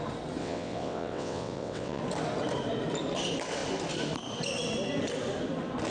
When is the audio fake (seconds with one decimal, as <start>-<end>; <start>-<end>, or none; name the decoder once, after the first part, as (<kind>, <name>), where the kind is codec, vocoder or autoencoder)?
0.4-2.0 (vocoder, WaveNeXt)